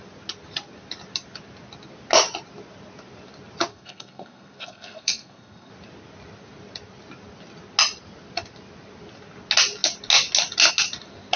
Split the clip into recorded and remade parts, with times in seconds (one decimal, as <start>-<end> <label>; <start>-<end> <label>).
0.0-3.7 recorded; 3.7-5.7 remade; 5.7-11.4 recorded